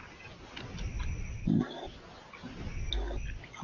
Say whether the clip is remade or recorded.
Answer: recorded